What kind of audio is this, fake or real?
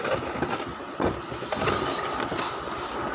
real